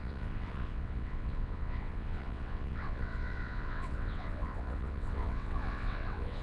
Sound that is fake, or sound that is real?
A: fake